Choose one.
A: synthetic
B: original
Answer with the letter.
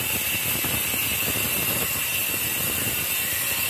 B